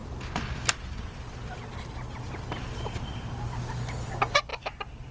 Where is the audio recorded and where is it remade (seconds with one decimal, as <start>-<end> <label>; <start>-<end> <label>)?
0.0-5.1 recorded